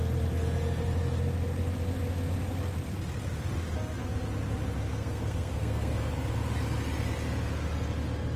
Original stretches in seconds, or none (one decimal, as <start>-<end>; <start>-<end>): 0.0-4.9; 6.1-8.4